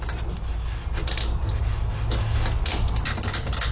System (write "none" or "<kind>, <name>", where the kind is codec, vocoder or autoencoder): none